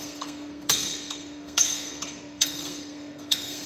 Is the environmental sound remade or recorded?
remade